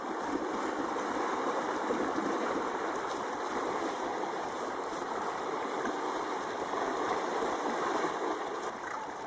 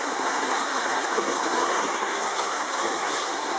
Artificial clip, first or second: second